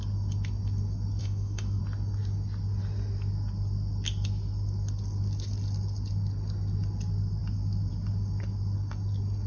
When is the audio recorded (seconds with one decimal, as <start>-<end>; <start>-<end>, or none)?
0.0-1.2; 1.8-9.5